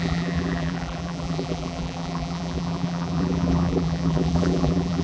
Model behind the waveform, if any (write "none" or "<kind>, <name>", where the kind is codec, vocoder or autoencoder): vocoder, BigVGAN v2